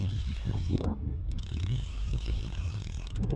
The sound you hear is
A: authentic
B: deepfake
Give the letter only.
B